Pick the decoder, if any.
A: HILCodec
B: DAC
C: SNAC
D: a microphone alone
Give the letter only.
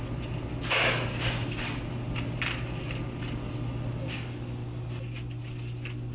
D